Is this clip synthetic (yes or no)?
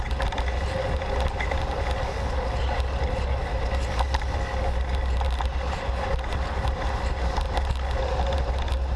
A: no